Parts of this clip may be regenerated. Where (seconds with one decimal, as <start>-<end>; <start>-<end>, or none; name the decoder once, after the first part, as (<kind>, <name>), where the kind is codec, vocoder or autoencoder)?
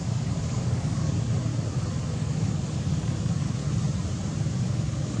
0.0-1.5 (codec, DAC); 2.1-3.6; 4.6-5.2